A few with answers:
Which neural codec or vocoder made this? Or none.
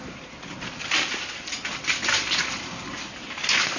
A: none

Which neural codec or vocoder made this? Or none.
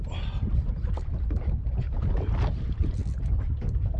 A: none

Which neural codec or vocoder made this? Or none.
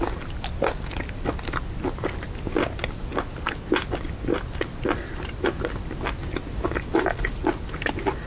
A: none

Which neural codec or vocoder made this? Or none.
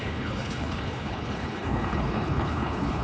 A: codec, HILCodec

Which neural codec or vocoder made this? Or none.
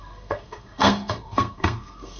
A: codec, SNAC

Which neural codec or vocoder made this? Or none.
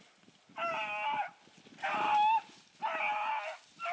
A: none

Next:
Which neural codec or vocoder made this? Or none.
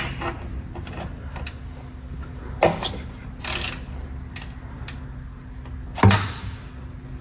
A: none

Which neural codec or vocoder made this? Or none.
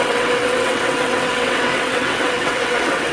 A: vocoder, WaveNeXt